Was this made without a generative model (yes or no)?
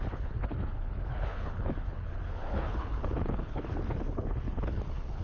no